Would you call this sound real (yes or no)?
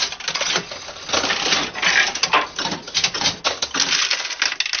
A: yes